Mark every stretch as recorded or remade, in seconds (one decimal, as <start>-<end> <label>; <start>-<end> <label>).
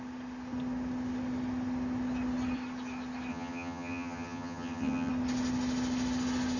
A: 0.0-3.3 recorded; 3.3-5.1 remade; 5.1-6.6 recorded